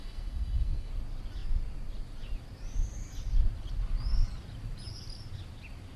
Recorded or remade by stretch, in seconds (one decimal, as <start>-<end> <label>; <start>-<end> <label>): 0.0-0.9 remade; 0.9-6.0 recorded